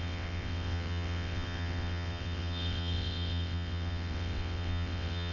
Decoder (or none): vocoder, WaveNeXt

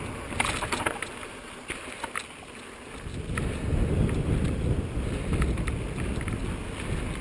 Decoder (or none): none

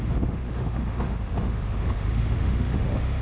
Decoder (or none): autoencoder, DAC-VAE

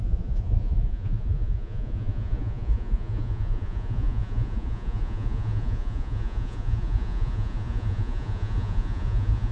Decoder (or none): vocoder, Vocos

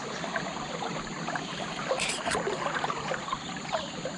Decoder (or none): none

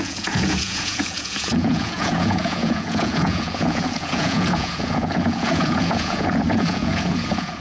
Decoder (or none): vocoder, Vocos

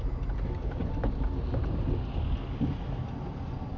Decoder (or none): none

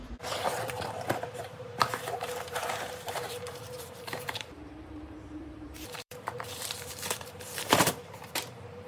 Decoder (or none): vocoder, BigVGAN v2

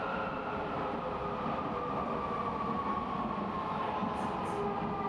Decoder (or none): none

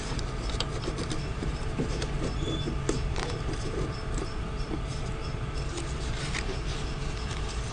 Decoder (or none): vocoder, BigVGAN v2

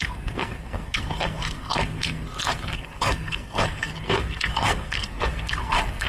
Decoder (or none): codec, SNAC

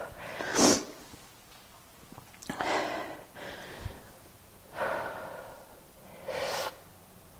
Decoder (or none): none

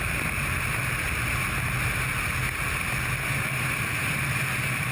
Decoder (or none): none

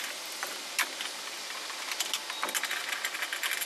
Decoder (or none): none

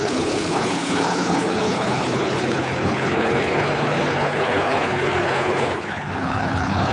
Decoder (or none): codec, HILCodec